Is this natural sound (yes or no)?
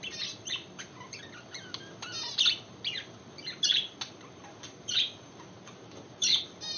yes